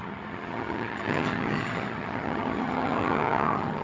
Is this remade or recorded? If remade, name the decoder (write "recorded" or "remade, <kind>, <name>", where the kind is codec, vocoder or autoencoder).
remade, vocoder, HiFi-GAN